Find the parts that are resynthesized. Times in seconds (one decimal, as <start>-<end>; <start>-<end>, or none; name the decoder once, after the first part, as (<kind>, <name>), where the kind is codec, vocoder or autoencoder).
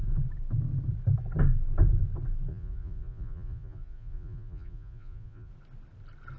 2.5-5.5 (vocoder, Vocos)